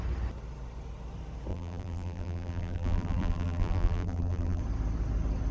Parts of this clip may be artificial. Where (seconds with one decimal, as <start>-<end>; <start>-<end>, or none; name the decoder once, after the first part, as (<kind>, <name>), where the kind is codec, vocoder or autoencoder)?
1.5-4.6 (vocoder, BigVGAN v2)